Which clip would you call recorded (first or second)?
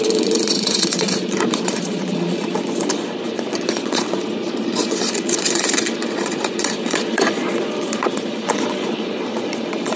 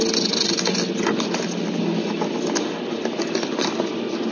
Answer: second